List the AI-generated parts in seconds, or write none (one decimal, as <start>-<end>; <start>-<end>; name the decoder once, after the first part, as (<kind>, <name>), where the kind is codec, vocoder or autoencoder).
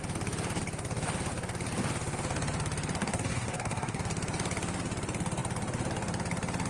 3.0-4.0 (codec, SNAC)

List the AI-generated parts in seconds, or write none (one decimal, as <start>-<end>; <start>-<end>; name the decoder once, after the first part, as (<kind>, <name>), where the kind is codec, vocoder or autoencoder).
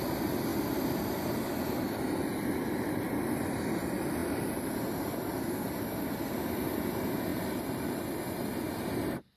7.3-8.0 (vocoder, BigVGAN v2)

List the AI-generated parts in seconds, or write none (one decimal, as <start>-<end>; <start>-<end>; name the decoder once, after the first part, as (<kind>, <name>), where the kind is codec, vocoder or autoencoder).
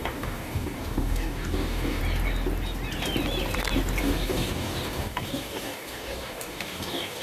0.0-2.0 (codec, DAC); 4.0-7.2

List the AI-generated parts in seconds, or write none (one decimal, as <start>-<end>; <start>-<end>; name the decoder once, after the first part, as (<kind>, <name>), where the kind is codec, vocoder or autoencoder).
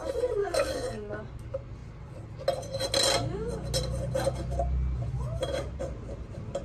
0.4-1.2 (codec, DAC)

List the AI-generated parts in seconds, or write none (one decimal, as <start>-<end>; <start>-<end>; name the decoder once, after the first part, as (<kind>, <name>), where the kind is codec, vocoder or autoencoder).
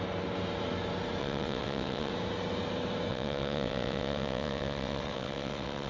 1.2-2.1 (vocoder, WaveNeXt); 3.1-5.9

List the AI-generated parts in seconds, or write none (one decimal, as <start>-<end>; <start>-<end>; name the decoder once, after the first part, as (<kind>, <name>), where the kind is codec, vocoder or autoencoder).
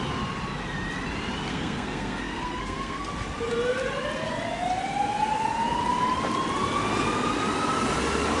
1.5-3.1 (codec, SNAC)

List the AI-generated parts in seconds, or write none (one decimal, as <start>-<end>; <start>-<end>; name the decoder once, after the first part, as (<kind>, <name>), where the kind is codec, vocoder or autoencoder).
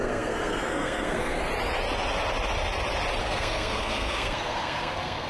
0.0-1.4 (codec, SNAC); 3.2-5.3